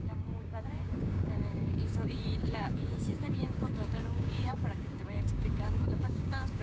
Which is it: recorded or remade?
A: remade